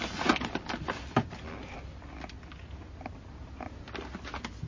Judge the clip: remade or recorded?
recorded